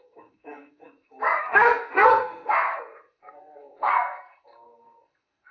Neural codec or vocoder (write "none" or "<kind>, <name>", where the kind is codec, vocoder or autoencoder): codec, SNAC